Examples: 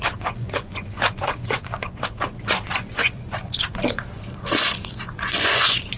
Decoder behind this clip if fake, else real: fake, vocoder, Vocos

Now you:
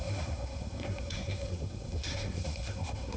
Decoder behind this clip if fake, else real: fake, codec, SNAC